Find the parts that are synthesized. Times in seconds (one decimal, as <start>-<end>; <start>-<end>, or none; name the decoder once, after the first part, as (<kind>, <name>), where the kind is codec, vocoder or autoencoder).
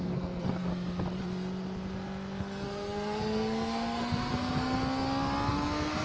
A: 0.0-0.7 (codec, SNAC); 2.4-4.8; 5.5-6.0